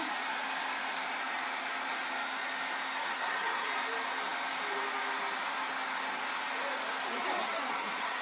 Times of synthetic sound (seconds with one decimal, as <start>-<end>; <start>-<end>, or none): 3.0-3.7; 7.4-8.2